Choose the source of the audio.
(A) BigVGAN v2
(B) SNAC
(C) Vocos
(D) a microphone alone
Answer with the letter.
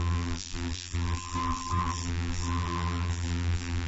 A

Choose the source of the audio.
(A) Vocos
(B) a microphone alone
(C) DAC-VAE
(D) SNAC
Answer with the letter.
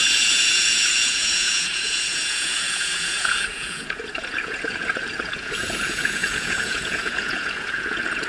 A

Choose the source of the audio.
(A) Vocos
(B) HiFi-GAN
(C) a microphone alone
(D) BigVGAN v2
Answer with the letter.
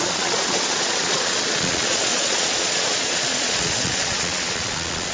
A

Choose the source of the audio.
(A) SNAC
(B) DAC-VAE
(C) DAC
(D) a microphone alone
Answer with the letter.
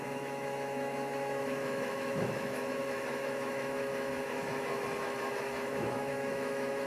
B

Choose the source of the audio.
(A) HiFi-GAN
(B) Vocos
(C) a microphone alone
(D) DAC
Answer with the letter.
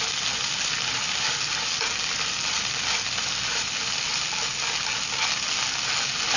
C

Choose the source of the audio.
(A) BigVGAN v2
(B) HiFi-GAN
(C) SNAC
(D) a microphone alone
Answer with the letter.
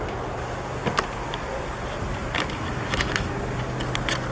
D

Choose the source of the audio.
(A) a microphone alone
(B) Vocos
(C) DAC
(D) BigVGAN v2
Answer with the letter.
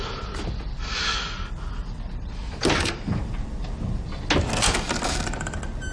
A